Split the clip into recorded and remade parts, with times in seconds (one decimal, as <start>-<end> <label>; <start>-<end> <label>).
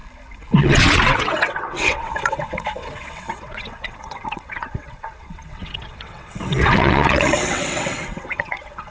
0.0-0.6 recorded; 0.6-8.9 remade